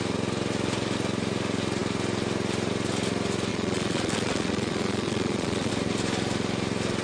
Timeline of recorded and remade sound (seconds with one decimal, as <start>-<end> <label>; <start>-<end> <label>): 0.0-3.5 recorded; 3.5-5.7 remade; 5.7-7.0 recorded